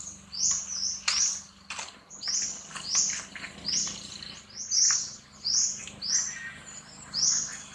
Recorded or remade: recorded